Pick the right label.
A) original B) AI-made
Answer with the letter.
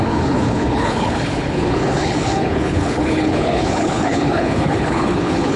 B